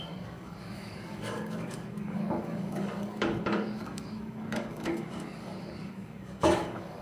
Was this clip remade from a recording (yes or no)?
yes